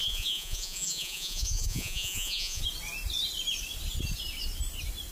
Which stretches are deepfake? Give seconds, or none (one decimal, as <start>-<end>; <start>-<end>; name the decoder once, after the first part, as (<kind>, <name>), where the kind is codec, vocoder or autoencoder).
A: 0.0-2.6 (vocoder, Vocos)